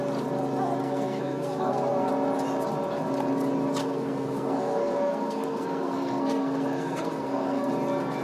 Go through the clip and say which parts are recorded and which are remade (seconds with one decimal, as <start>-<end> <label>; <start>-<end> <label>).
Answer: 0.0-0.8 recorded; 0.8-2.1 remade; 2.1-3.8 recorded; 3.8-7.7 remade; 7.7-8.2 recorded